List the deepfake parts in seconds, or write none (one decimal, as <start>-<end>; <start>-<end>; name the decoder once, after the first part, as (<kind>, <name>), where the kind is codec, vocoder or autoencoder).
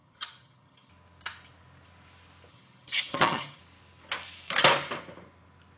0.0-0.9 (vocoder, HiFi-GAN); 2.5-3.6